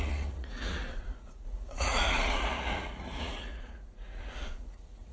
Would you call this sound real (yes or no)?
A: no